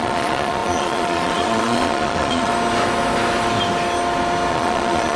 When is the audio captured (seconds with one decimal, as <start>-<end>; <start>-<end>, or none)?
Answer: 2.5-4.5